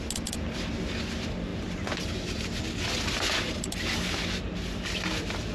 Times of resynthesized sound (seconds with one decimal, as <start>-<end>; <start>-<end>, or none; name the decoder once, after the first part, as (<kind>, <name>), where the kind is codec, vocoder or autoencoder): none